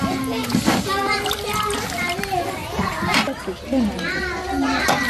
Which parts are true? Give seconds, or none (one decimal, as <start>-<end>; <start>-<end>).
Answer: 0.0-5.1